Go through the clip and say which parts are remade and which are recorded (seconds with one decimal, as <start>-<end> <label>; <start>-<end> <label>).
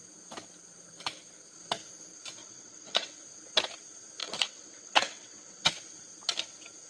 0.0-2.4 recorded; 2.4-3.2 remade; 3.2-4.2 recorded; 4.2-5.7 remade; 5.7-6.9 recorded